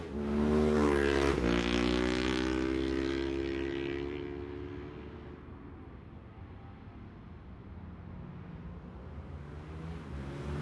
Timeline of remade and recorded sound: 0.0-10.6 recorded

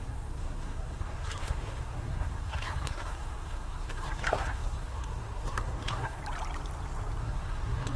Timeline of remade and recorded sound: 0.0-6.2 remade; 6.2-7.2 recorded; 7.2-8.0 remade

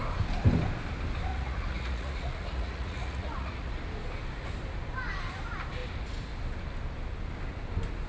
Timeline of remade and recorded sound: 0.0-1.3 recorded; 1.3-3.7 remade; 3.7-8.1 recorded